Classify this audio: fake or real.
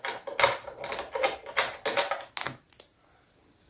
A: real